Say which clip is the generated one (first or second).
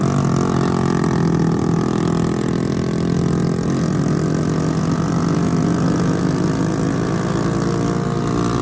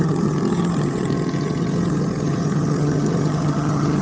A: second